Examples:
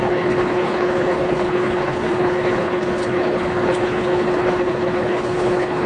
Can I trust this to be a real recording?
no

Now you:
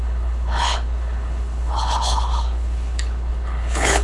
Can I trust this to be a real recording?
no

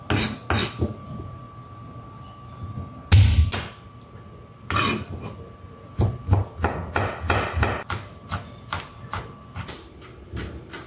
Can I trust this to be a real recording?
yes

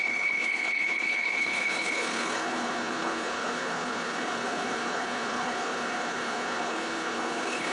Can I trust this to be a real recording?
no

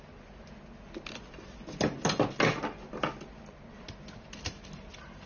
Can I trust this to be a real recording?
yes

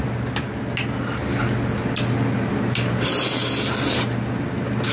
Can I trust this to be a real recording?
yes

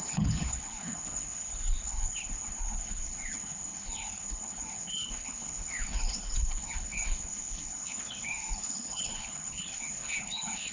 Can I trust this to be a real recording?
no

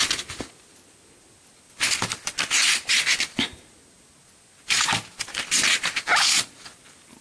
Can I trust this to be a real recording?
yes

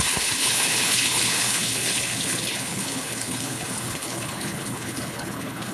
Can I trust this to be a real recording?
no